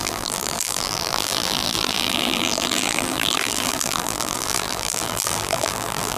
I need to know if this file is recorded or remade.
remade